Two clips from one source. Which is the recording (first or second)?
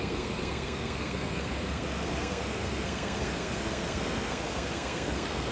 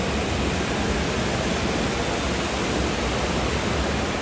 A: second